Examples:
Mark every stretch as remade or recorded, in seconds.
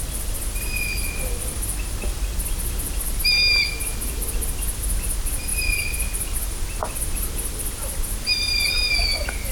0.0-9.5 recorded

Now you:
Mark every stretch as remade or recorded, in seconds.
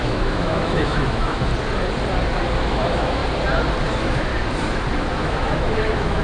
0.0-1.5 remade; 1.5-2.6 recorded; 2.6-3.2 remade; 3.2-3.8 recorded; 3.8-4.3 remade; 4.3-5.1 recorded; 5.1-6.2 remade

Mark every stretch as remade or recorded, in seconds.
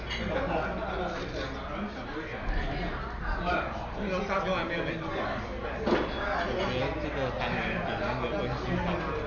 0.0-9.3 recorded